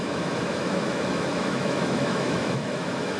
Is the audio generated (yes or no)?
yes